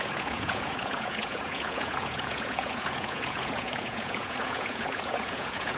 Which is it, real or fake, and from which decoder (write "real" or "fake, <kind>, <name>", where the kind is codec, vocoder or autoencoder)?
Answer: fake, vocoder, Vocos